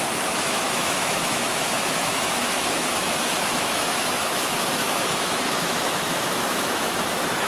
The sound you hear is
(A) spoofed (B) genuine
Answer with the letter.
A